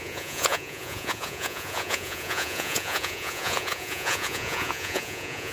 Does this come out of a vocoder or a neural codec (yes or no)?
yes